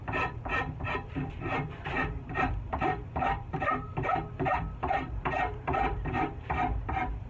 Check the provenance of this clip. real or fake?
fake